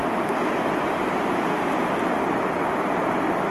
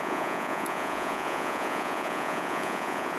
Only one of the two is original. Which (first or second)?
first